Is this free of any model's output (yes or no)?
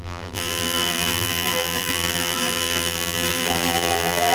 no